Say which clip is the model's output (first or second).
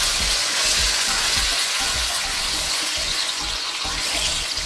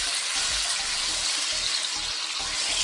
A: first